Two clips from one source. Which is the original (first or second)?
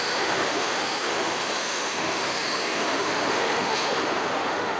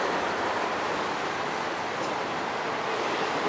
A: second